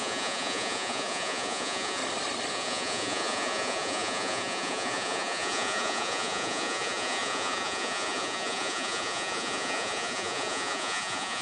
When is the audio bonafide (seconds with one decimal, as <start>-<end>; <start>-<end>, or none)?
2.0-2.5

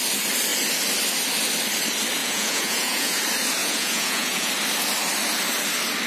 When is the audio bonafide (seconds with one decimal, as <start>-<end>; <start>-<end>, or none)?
0.0-2.2; 3.2-3.6; 4.5-6.1